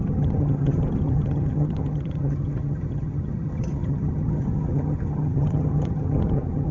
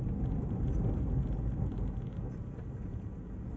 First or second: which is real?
second